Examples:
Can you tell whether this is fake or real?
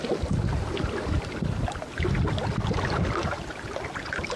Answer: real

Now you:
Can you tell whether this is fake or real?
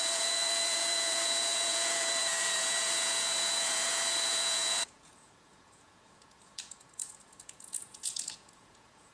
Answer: fake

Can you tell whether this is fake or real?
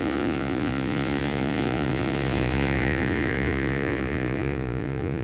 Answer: fake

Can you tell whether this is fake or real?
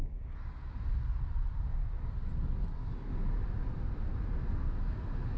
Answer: real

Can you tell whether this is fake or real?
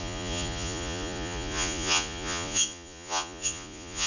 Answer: fake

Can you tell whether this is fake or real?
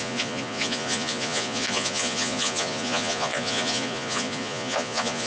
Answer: fake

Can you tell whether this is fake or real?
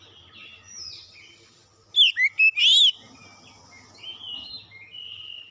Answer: real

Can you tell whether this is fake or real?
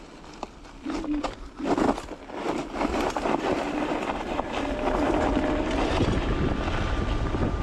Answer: real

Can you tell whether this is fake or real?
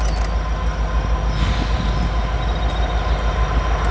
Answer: real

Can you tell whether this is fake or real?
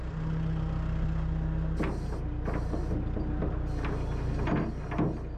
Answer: real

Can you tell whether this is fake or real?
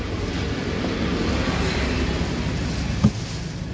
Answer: real